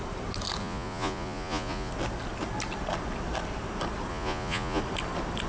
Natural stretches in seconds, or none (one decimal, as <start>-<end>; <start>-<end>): 0.0-0.6; 1.9-4.1; 4.8-5.5